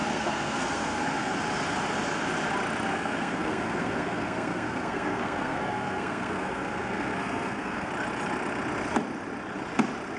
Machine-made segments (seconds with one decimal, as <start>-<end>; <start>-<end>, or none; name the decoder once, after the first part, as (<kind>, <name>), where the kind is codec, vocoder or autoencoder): 0.0-1.3 (codec, SNAC); 2.9-7.9